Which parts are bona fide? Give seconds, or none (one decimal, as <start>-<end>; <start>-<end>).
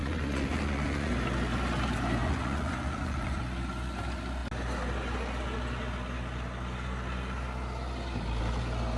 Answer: 1.1-2.2; 3.4-9.0